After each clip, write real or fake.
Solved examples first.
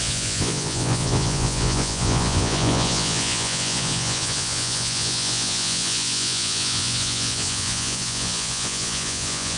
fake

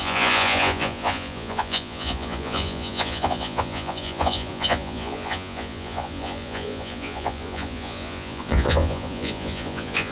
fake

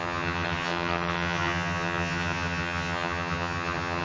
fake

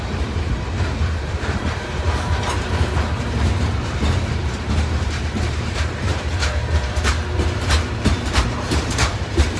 fake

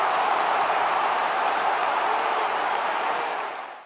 fake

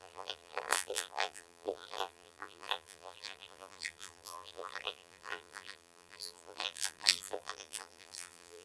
fake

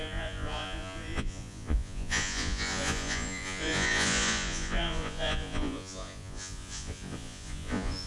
fake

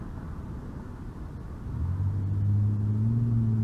real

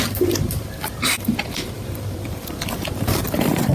fake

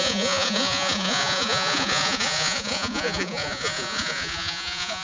fake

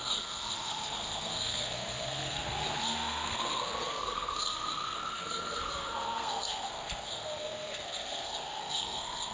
fake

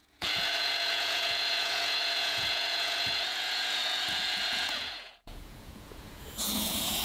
fake